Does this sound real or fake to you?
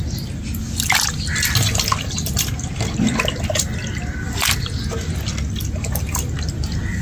real